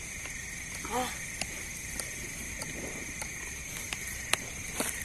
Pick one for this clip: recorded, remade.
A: recorded